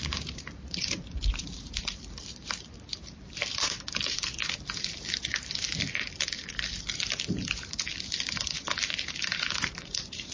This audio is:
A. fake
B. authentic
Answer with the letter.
A